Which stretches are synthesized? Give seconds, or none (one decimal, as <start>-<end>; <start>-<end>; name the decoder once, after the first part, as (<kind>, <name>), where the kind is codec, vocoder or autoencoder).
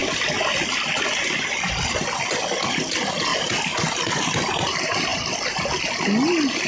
0.0-0.9 (vocoder, BigVGAN v2); 3.3-4.5